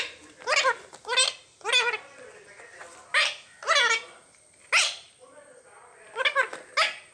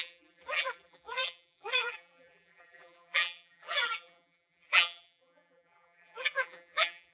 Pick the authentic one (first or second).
first